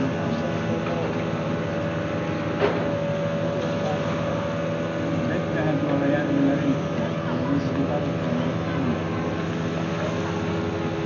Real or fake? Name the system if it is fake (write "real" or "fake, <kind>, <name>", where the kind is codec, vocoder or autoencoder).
real